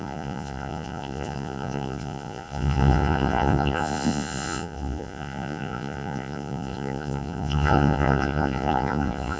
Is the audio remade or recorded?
remade